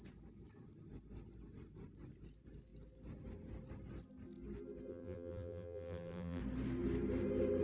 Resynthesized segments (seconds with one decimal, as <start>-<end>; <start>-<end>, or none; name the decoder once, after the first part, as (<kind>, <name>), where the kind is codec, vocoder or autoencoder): 4.9-6.4 (vocoder, BigVGAN v2)

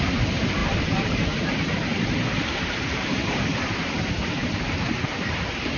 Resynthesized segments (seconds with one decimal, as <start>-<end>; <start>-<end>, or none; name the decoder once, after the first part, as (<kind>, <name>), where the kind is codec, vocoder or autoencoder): 0.6-3.4 (vocoder, BigVGAN v2); 4.4-5.8

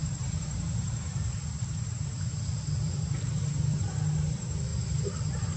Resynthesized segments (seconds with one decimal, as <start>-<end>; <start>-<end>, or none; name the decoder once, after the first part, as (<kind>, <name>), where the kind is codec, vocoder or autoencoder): 0.0-4.7 (vocoder, BigVGAN v2)

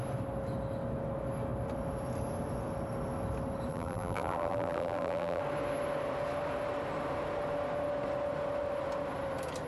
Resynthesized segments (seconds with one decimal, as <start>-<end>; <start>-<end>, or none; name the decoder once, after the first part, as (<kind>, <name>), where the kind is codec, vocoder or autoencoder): 3.7-5.4 (vocoder, BigVGAN v2)